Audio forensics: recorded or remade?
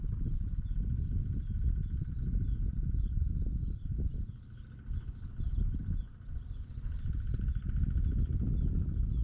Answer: recorded